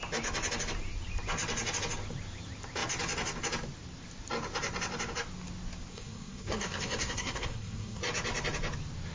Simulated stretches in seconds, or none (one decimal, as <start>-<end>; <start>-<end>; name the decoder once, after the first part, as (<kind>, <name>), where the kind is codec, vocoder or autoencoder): 5.9-8.0 (codec, SNAC)